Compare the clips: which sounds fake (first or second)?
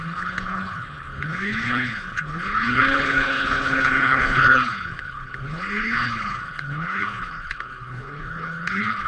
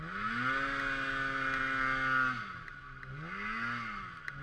first